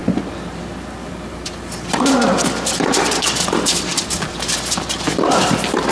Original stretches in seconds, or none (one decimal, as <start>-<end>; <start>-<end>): 0.0-1.1